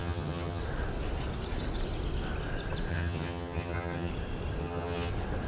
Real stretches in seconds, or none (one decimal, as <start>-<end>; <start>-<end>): 0.6-2.9; 4.1-4.6; 5.1-5.5